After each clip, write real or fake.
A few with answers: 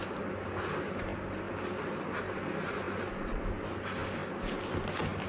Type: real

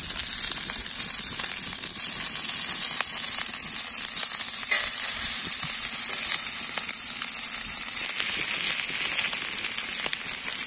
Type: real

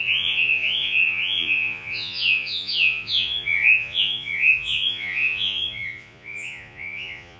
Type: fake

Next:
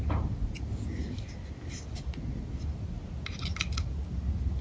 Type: real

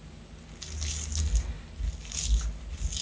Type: real